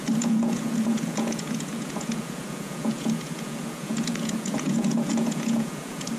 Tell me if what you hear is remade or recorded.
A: remade